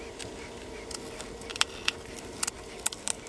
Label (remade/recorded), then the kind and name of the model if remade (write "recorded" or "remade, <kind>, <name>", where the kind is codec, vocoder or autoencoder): recorded